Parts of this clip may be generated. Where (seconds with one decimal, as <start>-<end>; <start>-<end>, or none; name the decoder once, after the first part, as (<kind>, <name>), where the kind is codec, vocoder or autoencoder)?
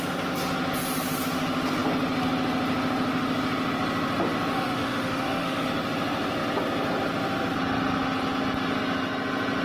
4.5-5.7 (autoencoder, DAC-VAE)